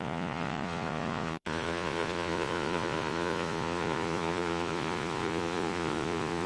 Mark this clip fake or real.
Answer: fake